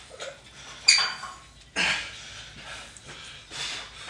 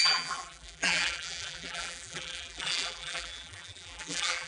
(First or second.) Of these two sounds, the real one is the first